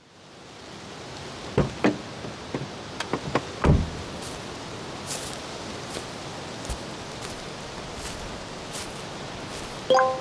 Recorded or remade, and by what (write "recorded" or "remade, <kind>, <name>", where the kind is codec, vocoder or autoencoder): recorded